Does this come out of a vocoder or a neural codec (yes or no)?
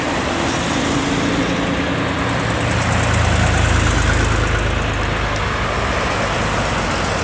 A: no